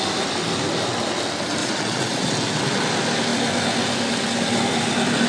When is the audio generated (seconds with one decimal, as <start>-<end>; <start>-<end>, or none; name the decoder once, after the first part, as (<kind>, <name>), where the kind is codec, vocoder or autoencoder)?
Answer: 1.6-2.3 (vocoder, Vocos)